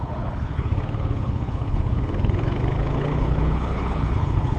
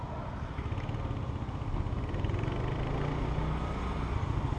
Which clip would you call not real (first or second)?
first